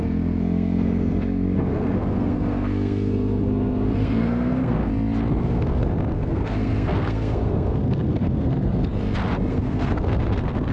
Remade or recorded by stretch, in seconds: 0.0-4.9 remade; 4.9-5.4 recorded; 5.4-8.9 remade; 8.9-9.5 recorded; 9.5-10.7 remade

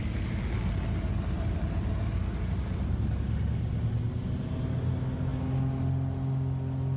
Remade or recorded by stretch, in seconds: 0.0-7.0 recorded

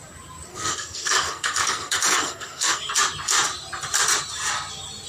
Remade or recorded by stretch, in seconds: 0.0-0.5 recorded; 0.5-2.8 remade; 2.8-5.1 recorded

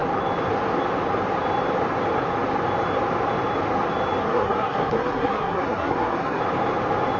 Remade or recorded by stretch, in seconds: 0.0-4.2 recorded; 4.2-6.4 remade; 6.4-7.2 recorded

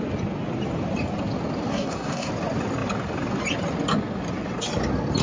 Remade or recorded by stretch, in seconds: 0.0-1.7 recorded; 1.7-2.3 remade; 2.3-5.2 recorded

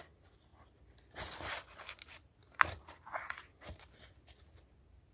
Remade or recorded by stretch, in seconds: 0.0-5.1 recorded

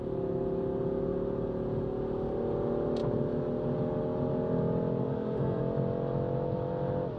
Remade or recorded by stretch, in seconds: 0.0-5.0 recorded; 5.0-5.6 remade; 5.6-7.2 recorded

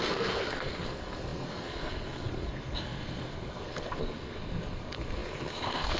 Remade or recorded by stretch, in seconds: 0.0-6.0 remade